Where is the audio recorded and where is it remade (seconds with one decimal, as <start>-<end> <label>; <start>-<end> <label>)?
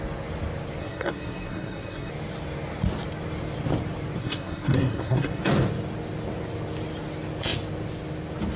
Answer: 0.0-0.8 recorded; 0.8-2.1 remade; 2.1-4.2 recorded; 4.2-5.4 remade; 5.4-8.6 recorded